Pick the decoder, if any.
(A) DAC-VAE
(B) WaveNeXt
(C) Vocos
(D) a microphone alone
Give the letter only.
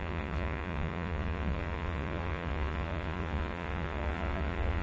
C